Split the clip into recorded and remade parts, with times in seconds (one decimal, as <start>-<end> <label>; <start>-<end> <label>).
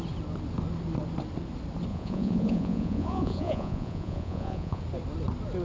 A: 0.0-1.9 recorded; 1.9-4.8 remade; 4.8-5.6 recorded